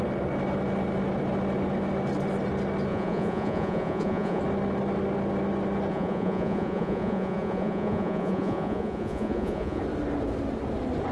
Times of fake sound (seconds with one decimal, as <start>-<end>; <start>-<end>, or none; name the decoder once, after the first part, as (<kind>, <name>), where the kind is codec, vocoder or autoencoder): 2.9-4.4 (vocoder, Vocos); 5.9-9.8